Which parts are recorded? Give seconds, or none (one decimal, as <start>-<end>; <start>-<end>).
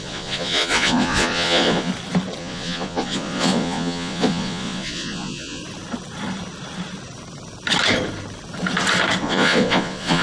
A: 1.9-2.4; 5.6-9.2